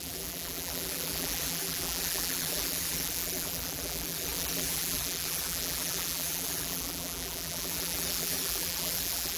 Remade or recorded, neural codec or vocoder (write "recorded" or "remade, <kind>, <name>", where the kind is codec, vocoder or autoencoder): remade, vocoder, BigVGAN v2